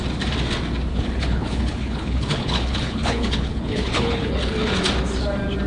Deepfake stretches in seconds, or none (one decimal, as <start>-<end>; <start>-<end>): 0.9-4.3